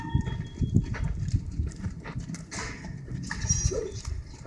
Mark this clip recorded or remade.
recorded